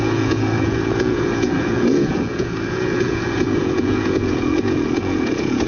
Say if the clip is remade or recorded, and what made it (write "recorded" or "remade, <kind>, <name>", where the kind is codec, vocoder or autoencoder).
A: remade, vocoder, Vocos